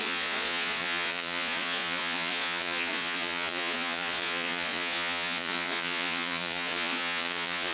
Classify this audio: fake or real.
fake